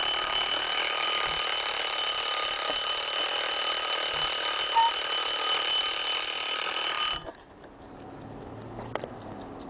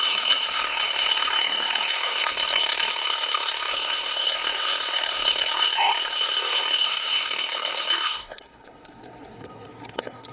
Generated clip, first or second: second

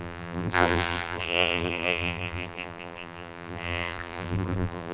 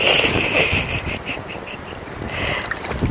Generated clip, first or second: first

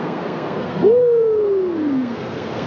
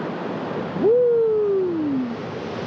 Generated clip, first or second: first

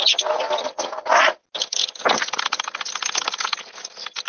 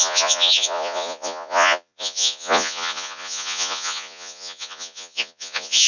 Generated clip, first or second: second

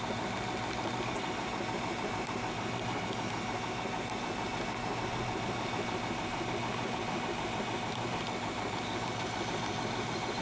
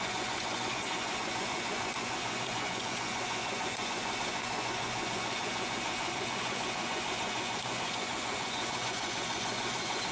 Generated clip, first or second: second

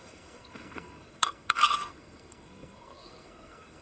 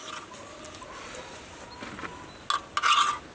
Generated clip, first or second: first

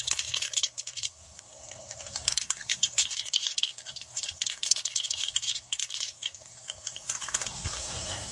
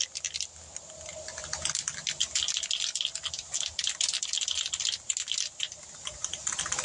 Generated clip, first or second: first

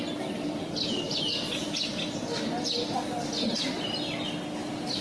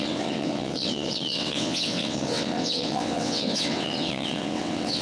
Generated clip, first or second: second